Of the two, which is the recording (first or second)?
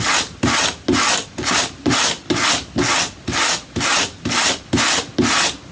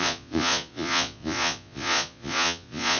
first